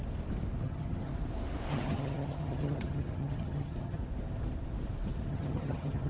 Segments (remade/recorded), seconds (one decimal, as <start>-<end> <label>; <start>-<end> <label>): 0.0-0.6 recorded; 0.6-1.1 remade; 1.1-1.7 recorded; 1.7-4.0 remade; 4.0-5.3 recorded; 5.3-6.1 remade